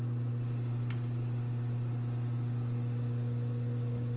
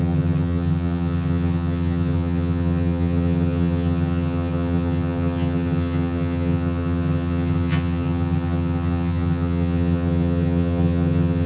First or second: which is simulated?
second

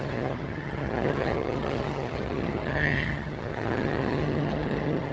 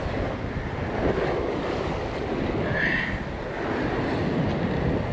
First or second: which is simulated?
first